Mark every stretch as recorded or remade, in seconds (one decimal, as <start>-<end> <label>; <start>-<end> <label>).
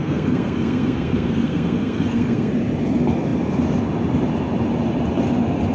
0.0-2.5 remade; 2.5-5.7 recorded